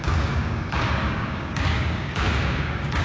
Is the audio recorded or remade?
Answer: remade